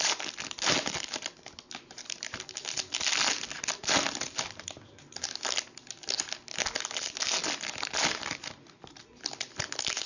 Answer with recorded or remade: recorded